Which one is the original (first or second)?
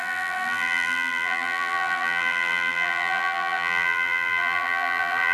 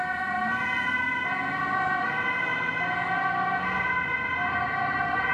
second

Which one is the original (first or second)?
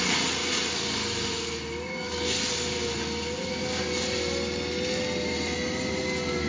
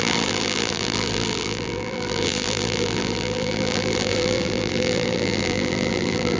first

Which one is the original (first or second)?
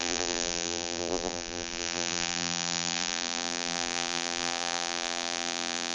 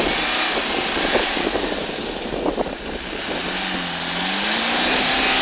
second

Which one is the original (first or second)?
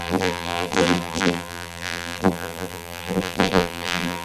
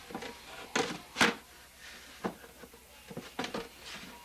second